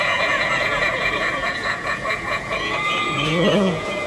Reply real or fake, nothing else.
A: fake